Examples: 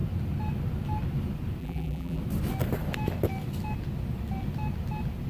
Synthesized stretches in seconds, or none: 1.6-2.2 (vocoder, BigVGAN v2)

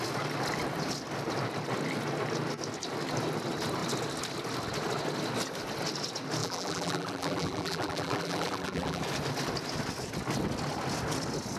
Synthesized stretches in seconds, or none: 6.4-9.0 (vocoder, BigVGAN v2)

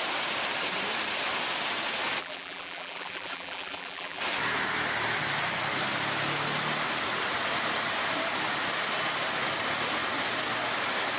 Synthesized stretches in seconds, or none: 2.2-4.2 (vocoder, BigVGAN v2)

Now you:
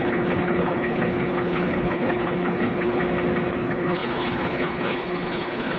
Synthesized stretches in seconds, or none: 0.0-3.0 (codec, HILCodec); 3.5-5.8

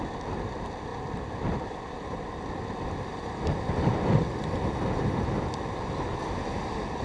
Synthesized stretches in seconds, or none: 0.9-4.7 (vocoder, BigVGAN v2)

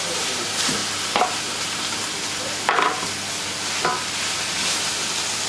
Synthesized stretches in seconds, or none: none